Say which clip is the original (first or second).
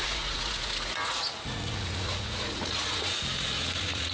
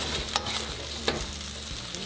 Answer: second